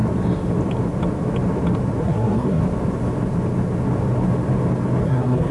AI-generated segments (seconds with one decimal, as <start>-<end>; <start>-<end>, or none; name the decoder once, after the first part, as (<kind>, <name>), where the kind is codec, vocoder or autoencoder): 2.0-2.6 (codec, SNAC); 5.0-5.5